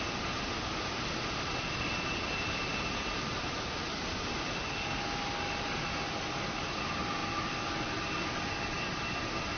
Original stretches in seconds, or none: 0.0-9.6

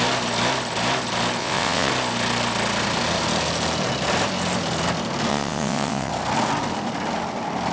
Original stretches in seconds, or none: 0.0-1.4; 1.9-5.3; 6.1-7.7

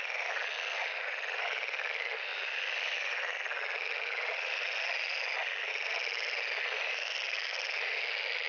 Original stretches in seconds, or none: 0.0-8.5